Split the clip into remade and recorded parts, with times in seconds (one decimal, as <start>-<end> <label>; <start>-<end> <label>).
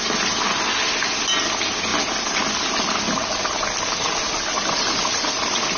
0.0-5.8 recorded